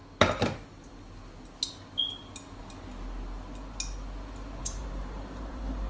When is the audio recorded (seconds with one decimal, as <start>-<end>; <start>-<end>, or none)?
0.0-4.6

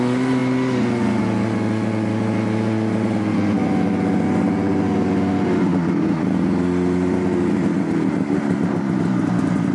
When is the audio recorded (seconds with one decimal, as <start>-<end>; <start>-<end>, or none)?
0.0-9.7

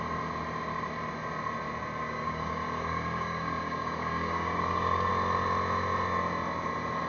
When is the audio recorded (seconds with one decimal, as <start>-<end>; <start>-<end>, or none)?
0.0-2.0; 5.1-7.1

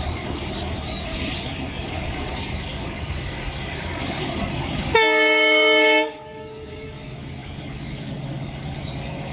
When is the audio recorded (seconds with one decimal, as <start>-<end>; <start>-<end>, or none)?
none

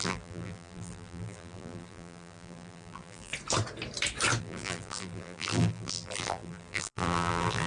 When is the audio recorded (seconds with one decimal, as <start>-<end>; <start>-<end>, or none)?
3.3-4.4

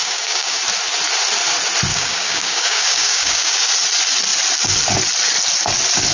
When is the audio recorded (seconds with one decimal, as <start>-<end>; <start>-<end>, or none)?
0.6-1.9; 3.7-6.1